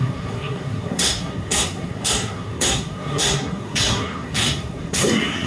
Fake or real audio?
fake